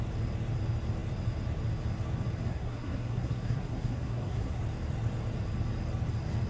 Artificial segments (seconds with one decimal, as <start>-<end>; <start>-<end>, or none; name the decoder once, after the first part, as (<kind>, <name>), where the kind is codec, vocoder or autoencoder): 2.5-4.6 (codec, SNAC)